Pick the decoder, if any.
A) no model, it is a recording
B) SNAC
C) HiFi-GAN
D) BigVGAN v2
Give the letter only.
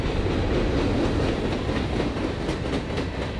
A